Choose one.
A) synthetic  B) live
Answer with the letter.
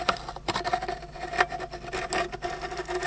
B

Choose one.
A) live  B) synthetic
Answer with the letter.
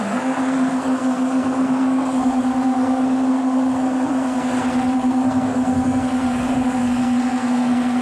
B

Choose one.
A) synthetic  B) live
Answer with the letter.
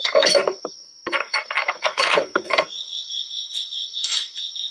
A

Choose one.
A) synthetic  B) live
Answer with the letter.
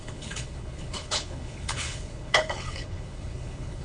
A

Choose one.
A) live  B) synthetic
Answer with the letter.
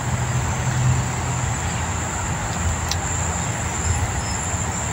A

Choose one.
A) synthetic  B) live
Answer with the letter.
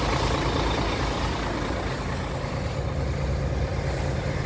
B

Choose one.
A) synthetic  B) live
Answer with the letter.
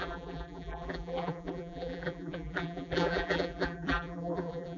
A